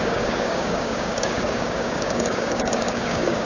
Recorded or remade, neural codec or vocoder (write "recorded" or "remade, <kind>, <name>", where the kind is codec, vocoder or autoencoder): remade, codec, DAC